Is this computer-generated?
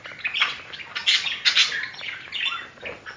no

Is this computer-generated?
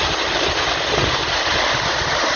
no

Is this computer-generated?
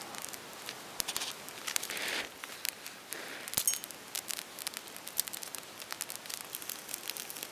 no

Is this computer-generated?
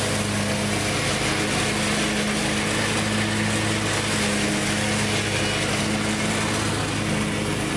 no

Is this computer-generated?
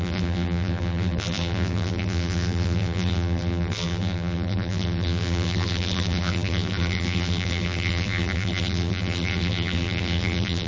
yes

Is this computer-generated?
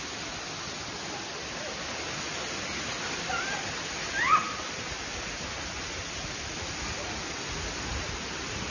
no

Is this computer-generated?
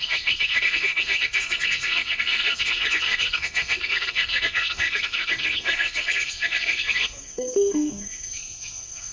yes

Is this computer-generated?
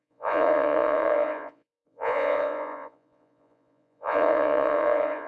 yes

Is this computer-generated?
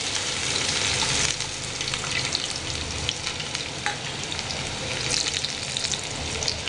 no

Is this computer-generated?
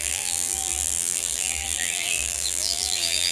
yes